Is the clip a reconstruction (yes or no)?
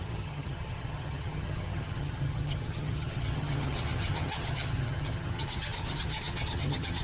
yes